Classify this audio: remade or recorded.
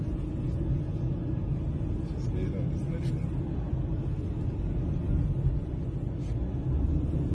recorded